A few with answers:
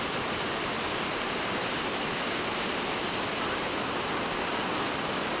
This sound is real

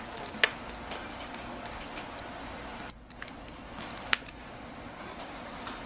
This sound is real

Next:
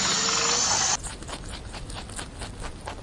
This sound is real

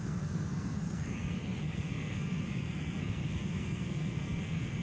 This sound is fake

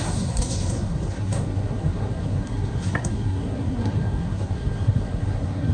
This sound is fake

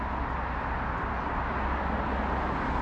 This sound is real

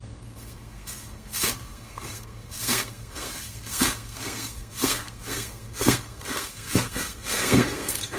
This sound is fake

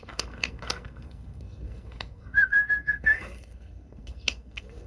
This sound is fake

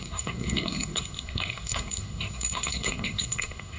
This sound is fake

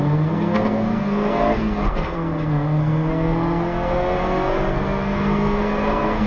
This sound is fake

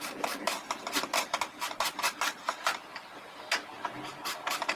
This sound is real